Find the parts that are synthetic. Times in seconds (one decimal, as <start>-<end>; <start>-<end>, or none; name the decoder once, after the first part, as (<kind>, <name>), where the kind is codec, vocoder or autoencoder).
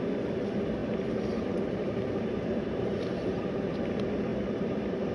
0.8-3.9 (vocoder, BigVGAN v2); 4.3-5.1